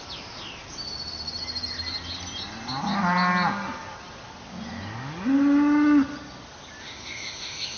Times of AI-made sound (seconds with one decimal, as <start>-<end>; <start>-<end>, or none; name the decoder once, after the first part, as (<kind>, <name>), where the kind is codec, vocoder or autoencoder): 6.8-7.8 (autoencoder, DAC-VAE)